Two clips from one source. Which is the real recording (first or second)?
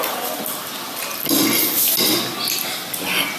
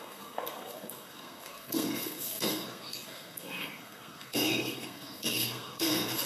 first